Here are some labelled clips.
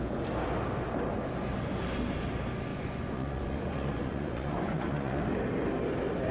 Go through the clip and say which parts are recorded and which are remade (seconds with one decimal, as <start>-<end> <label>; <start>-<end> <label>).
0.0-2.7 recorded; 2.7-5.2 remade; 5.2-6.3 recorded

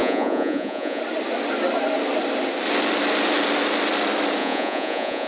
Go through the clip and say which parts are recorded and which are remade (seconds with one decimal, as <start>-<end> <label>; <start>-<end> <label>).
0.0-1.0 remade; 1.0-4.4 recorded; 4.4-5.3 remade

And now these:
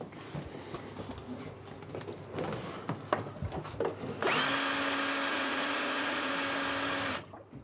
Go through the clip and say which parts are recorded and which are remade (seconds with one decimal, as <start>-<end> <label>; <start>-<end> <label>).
0.0-5.3 recorded; 5.3-6.3 remade; 6.3-7.6 recorded